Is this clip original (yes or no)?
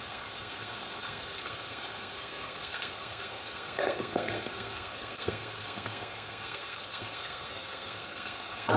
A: no